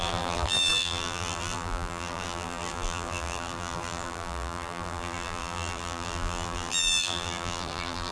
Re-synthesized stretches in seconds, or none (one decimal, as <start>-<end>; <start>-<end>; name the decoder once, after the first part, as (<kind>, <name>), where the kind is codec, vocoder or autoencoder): 0.0-8.1 (vocoder, BigVGAN v2)